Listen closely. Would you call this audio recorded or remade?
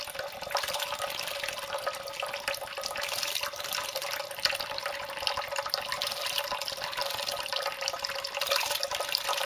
recorded